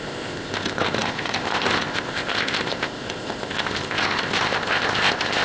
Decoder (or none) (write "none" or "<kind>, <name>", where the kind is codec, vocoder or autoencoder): codec, ZipCodec